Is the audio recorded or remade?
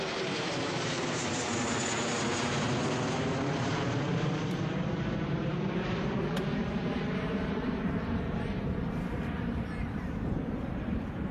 remade